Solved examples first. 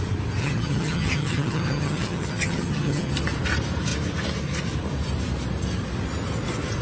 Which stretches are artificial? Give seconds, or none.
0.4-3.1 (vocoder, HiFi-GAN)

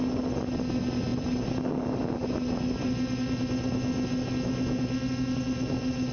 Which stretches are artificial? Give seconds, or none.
none

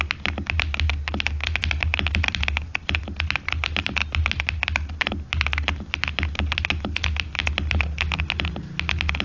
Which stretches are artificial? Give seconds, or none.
none

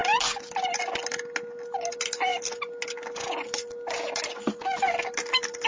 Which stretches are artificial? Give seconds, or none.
none

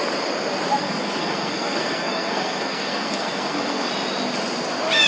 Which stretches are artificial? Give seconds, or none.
0.8-3.9 (codec, SNAC)